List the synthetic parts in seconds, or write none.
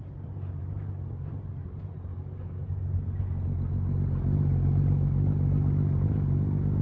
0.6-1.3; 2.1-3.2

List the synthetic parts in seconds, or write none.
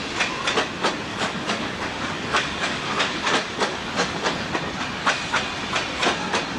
1.1-4.5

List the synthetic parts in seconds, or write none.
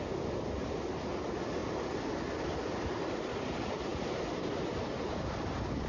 none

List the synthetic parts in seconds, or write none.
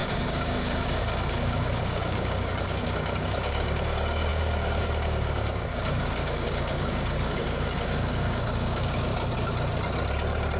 0.0-9.1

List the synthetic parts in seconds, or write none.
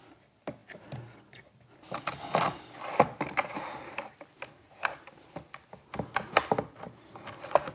none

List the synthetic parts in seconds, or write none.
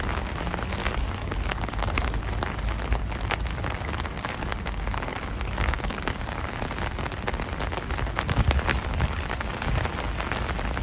0.8-2.2; 3.5-6.6; 8.7-9.5